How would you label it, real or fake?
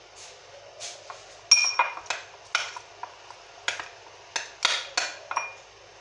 real